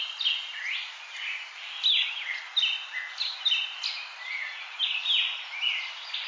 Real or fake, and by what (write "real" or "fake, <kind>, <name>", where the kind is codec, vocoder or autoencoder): real